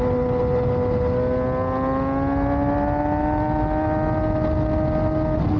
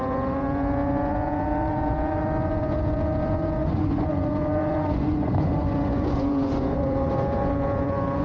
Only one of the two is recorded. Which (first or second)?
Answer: first